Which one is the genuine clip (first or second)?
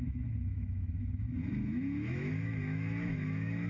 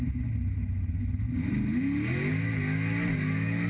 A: second